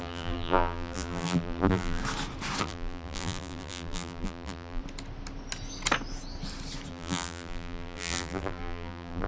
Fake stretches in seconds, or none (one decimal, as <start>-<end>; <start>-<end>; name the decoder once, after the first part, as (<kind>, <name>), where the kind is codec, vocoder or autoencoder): 0.0-2.0 (vocoder, BigVGAN v2); 2.6-4.8; 6.9-9.3